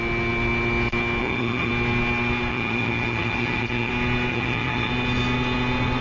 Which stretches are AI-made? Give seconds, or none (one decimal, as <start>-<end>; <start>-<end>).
1.2-1.7; 2.5-3.9; 4.3-4.9